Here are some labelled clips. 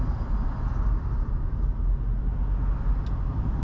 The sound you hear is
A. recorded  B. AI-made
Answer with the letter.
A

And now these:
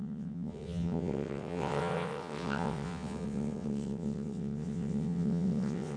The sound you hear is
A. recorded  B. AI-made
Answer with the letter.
B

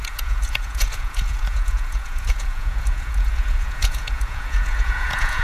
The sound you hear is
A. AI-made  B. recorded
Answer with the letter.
A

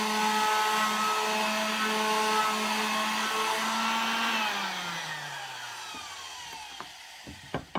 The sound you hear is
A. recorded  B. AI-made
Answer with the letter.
A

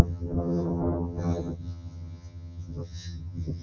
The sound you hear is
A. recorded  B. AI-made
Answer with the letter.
B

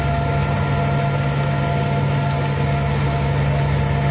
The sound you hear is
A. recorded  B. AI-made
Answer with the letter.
A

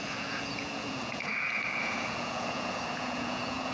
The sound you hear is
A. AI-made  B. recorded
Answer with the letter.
A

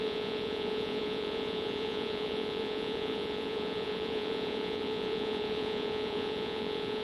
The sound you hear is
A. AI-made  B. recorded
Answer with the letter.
A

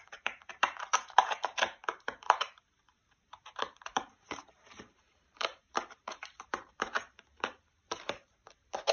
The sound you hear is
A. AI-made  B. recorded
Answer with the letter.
A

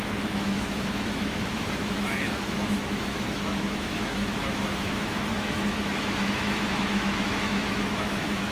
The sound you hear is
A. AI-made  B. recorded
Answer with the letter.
A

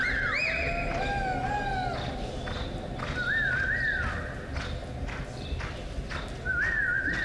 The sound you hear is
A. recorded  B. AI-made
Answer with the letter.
A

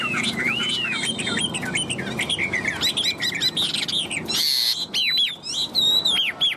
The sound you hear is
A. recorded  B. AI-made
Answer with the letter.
A